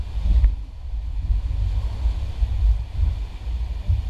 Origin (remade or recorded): recorded